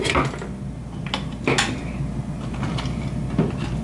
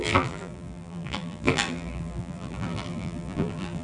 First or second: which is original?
first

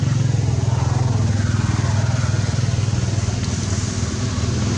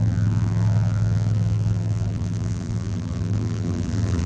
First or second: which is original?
first